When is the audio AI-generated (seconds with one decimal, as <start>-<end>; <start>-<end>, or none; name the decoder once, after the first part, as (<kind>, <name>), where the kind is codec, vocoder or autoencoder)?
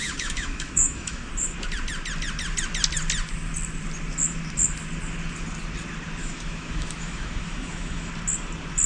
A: 0.0-1.3 (autoencoder, DAC-VAE); 6.2-8.1